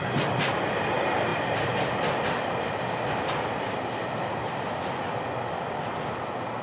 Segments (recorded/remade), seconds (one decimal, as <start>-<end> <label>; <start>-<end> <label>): 0.0-6.6 recorded